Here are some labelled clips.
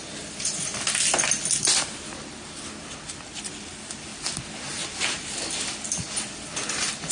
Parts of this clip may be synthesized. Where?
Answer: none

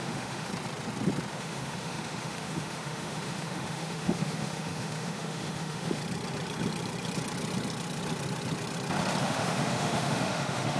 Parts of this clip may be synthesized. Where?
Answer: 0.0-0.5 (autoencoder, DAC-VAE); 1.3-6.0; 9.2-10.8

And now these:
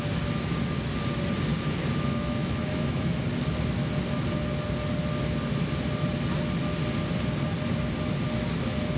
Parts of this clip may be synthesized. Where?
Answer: 2.1-3.2 (autoencoder, DAC-VAE)